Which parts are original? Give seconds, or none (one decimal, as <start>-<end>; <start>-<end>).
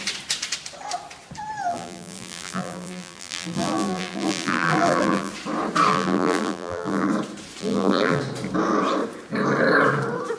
0.0-1.7; 5.3-5.9; 7.1-7.6; 8.2-10.4